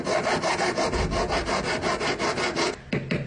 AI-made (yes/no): no